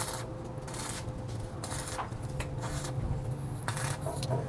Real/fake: real